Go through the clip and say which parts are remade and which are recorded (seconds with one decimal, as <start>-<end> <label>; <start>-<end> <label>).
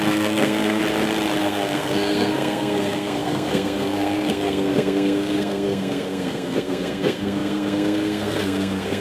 0.0-0.8 remade; 0.8-1.4 recorded; 1.4-9.0 remade